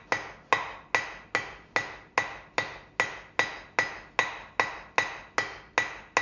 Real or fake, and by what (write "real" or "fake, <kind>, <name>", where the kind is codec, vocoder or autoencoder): real